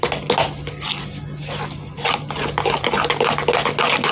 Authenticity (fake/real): real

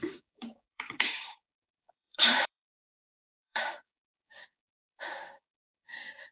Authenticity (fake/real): fake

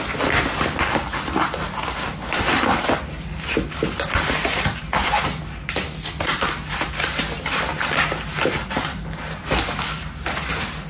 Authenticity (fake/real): real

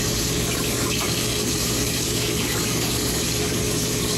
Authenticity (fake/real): fake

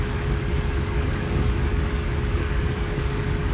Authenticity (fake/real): fake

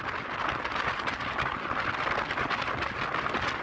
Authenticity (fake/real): real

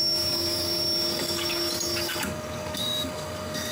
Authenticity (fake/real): fake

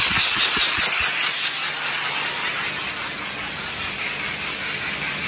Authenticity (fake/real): real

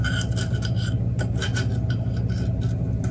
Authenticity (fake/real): real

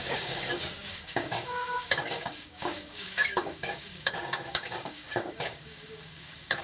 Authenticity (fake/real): fake